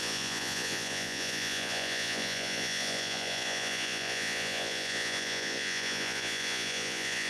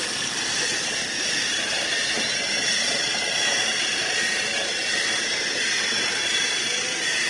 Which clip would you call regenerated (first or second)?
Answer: first